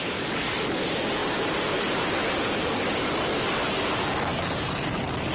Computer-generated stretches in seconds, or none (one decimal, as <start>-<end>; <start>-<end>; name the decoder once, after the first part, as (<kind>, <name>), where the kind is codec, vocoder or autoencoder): 1.2-3.1 (vocoder, BigVGAN v2); 4.3-5.3